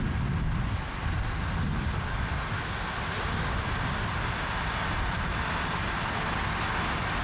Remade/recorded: recorded